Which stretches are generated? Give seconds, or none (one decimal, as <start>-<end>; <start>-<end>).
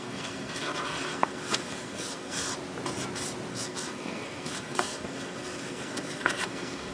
0.0-2.5; 3.5-6.9